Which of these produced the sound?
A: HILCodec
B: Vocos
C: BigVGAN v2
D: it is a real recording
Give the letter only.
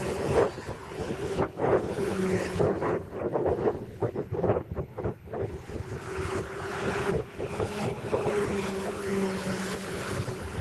A